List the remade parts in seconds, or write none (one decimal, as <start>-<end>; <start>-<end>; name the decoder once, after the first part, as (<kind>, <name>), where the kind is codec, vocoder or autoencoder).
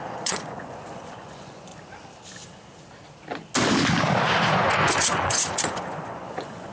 0.0-1.7 (vocoder, Vocos); 4.5-6.7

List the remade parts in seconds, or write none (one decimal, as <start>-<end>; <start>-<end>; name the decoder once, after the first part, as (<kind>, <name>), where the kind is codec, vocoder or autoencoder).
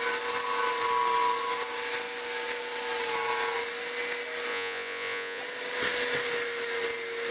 4.5-5.4 (vocoder, Vocos)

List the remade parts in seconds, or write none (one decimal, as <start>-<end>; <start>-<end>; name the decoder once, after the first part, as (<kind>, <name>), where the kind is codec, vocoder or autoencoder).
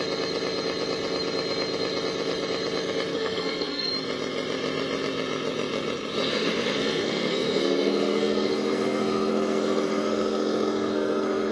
3.1-3.9 (codec, SNAC); 6.3-11.5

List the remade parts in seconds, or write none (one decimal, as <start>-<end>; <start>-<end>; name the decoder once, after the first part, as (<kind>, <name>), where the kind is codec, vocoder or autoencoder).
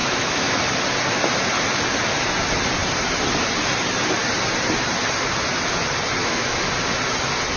0.0-0.7 (autoencoder, DAC-VAE); 6.2-6.7